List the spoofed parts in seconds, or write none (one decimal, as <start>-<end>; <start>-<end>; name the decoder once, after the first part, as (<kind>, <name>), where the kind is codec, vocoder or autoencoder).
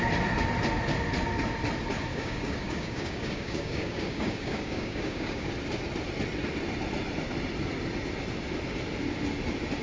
2.1-5.5 (codec, DAC)